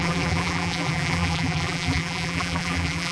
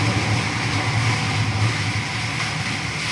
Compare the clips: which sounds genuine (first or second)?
second